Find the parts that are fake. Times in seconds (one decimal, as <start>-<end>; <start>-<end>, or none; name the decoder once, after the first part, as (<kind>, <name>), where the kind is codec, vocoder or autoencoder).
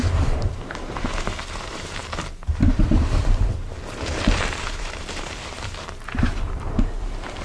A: 0.0-2.0 (vocoder, BigVGAN v2); 2.7-7.4